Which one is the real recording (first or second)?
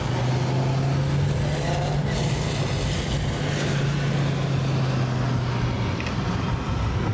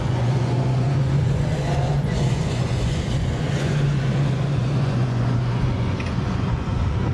first